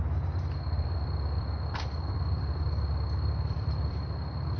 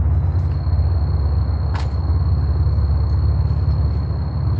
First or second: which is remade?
first